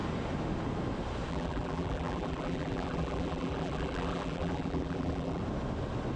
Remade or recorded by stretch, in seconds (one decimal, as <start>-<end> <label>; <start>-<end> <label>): 0.0-1.3 recorded; 1.3-5.4 remade; 5.4-6.2 recorded